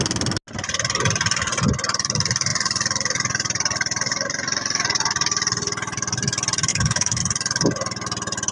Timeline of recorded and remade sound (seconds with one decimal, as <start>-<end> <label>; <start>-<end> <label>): 0.0-6.7 recorded; 6.7-7.2 remade; 7.2-8.5 recorded